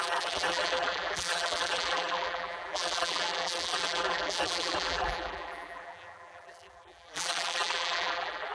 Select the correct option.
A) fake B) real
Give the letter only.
A